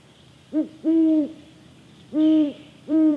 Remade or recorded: remade